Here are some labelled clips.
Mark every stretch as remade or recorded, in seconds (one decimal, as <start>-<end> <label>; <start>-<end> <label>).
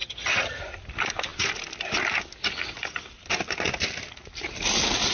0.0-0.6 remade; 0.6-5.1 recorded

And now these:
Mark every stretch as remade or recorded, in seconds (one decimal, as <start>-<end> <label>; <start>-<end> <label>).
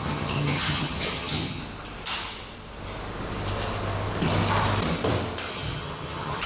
0.0-1.6 remade; 1.6-5.5 recorded; 5.5-6.5 remade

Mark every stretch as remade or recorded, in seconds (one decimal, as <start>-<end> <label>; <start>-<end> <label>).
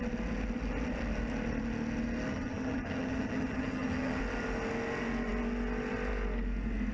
0.0-2.3 recorded; 2.3-4.2 remade; 4.2-6.9 recorded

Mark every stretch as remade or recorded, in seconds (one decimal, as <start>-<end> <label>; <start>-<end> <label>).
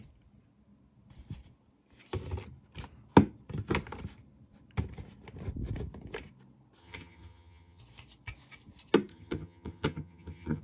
0.0-6.8 recorded; 6.8-7.8 remade; 7.8-9.1 recorded; 9.1-10.6 remade